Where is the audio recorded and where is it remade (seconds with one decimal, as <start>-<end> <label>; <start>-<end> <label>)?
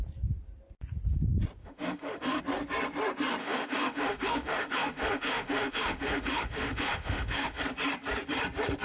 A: 0.0-1.6 recorded; 1.6-2.4 remade; 2.4-3.4 recorded; 3.4-7.6 remade; 7.6-8.8 recorded